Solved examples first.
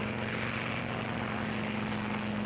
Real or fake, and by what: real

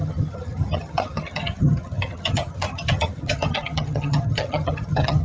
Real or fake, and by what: fake, vocoder, HiFi-GAN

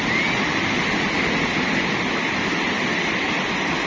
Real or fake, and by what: real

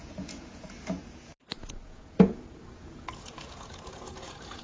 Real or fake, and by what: fake, vocoder, Vocos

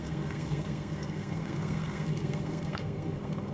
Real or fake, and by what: fake, codec, SNAC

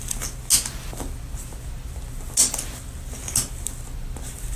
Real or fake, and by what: real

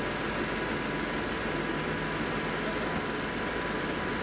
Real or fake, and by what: real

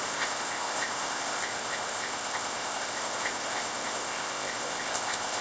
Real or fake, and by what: fake, codec, ZipCodec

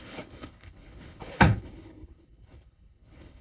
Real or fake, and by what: fake, codec, HILCodec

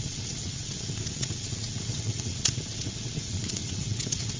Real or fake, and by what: fake, vocoder, WaveNeXt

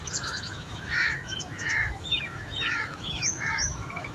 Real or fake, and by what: fake, autoencoder, DAC-VAE